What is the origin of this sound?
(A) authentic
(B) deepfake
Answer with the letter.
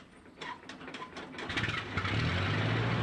A